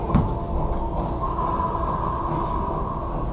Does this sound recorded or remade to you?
recorded